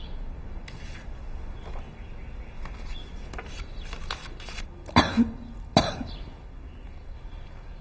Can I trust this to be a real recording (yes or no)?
yes